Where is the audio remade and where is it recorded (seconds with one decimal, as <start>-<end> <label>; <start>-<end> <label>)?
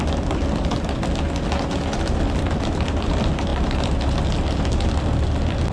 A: 0.0-5.7 recorded